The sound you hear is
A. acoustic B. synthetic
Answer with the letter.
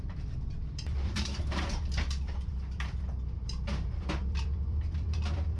B